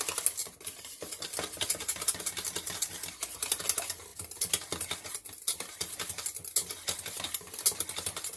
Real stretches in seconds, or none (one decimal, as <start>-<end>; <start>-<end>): 0.0-8.4